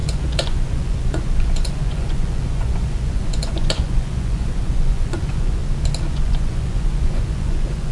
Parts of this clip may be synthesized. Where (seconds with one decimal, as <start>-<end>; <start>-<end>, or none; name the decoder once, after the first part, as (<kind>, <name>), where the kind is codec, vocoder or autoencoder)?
0.0-5.6 (vocoder, Vocos); 6.1-7.9